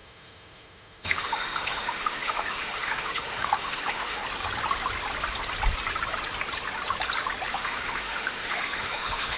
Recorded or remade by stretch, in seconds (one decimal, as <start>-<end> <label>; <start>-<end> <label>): 0.0-4.2 remade; 4.2-7.5 recorded; 7.5-9.4 remade